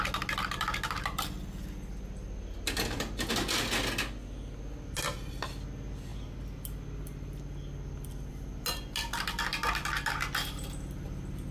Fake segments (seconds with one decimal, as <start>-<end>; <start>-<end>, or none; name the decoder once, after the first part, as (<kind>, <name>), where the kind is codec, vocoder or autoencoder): none